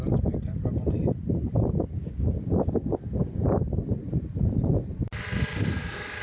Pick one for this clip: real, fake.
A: real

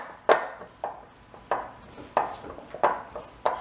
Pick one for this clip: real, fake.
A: real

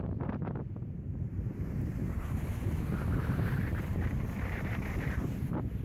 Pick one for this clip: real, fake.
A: fake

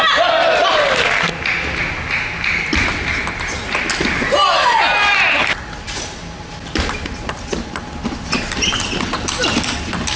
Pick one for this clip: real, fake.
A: real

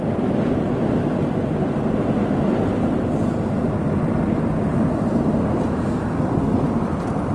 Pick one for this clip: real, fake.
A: fake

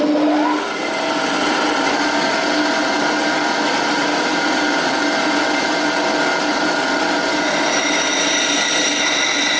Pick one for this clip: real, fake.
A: real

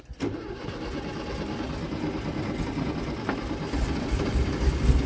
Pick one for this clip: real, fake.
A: fake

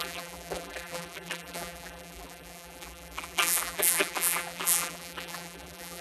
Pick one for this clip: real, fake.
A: fake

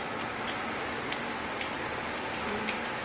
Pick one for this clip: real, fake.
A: real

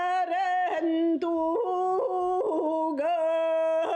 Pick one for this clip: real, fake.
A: real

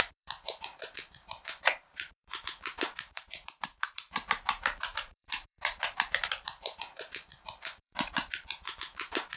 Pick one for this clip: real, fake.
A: fake